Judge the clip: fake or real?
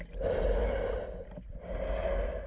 real